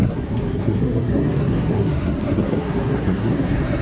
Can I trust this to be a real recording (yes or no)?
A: no